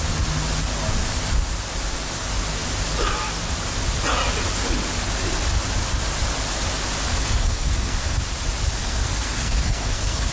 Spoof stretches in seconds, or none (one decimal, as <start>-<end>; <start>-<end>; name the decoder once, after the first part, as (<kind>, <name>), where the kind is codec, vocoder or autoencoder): 7.1-8.2 (codec, SNAC); 8.8-10.3